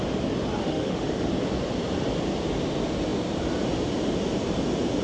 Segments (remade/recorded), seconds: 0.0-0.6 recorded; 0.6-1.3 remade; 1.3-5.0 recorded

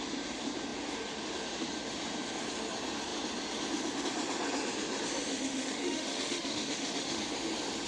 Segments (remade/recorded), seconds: 0.0-5.3 recorded; 5.3-7.2 remade; 7.2-7.9 recorded